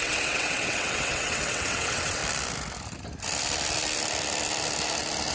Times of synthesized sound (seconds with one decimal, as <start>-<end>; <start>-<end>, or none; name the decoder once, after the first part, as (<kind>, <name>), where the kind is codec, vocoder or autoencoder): 0.0-2.2 (vocoder, WaveNeXt)